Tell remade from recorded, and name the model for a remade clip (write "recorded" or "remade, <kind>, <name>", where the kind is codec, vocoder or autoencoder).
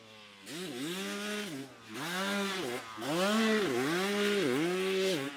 recorded